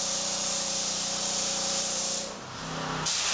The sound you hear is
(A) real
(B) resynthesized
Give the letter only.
B